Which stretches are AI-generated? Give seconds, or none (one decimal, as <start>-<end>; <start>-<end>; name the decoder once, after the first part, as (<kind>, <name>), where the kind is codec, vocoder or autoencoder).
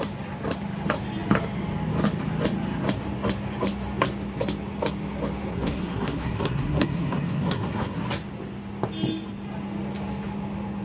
5.5-8.0 (codec, SNAC)